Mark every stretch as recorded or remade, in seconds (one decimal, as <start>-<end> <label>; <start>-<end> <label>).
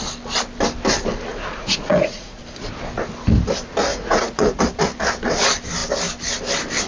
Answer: 0.0-1.3 recorded; 1.3-2.4 remade; 2.4-3.9 recorded; 3.9-4.6 remade; 4.6-6.9 recorded